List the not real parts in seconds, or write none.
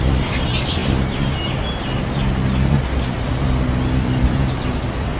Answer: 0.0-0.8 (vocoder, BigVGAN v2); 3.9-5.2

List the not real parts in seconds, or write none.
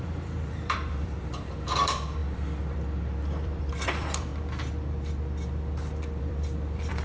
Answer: 0.0-4.3 (vocoder, BigVGAN v2); 6.2-7.0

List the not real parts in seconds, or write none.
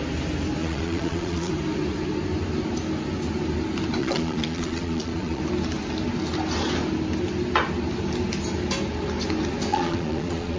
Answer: 0.6-1.5 (vocoder, Vocos); 4.0-5.4; 9.7-10.6